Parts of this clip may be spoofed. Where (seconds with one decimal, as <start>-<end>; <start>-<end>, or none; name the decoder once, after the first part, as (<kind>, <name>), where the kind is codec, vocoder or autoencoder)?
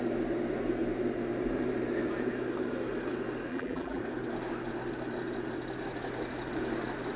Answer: 3.5-4.0 (vocoder, BigVGAN v2)